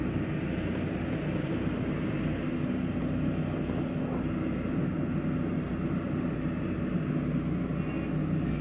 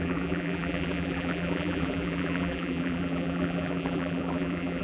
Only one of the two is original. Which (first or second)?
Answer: first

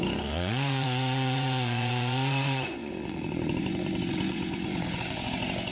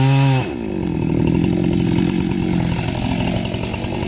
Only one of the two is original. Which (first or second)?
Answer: second